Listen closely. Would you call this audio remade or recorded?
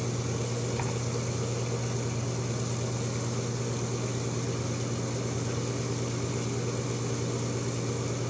recorded